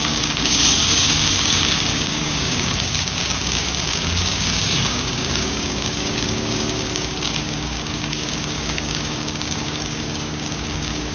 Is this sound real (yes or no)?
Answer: no